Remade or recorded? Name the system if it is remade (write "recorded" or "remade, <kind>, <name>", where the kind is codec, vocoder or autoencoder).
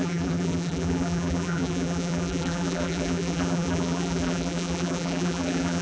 remade, vocoder, BigVGAN v2